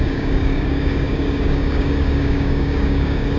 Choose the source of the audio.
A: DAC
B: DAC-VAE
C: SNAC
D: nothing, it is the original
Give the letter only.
A